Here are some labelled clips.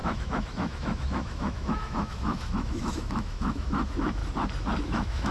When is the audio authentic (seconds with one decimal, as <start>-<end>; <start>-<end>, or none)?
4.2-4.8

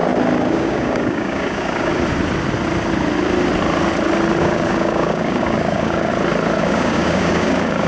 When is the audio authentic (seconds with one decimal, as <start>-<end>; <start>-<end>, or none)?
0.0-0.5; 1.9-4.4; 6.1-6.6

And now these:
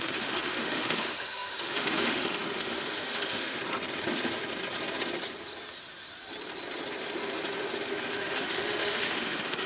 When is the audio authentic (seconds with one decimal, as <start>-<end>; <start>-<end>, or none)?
3.6-8.1

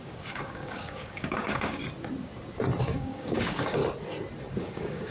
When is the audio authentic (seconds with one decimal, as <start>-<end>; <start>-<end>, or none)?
1.8-2.8; 3.8-4.6

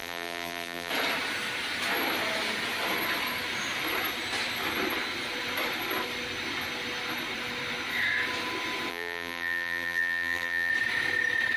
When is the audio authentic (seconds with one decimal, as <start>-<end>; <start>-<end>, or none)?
0.9-8.9; 10.7-11.6

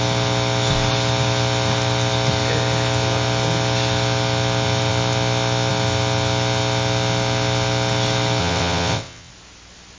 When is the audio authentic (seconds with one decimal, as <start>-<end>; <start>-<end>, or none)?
0.0-8.4; 9.3-10.0